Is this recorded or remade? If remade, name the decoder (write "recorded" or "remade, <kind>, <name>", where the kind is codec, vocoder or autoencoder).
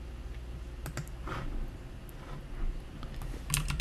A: recorded